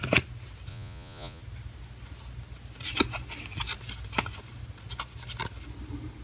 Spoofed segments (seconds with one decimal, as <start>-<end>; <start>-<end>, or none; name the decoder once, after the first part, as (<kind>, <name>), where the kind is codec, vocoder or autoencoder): 0.7-1.4 (vocoder, Vocos)